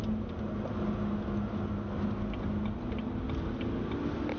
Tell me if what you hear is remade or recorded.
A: recorded